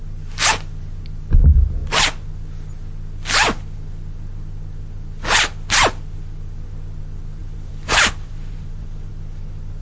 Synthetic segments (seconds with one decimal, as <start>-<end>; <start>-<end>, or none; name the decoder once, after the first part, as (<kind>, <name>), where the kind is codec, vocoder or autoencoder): 7.4-9.1 (vocoder, BigVGAN v2)